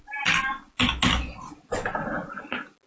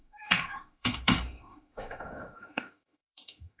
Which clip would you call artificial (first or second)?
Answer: second